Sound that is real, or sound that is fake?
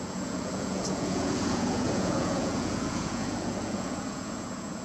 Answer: fake